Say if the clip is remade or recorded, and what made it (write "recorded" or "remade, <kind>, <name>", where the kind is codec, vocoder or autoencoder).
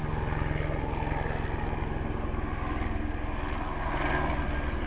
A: recorded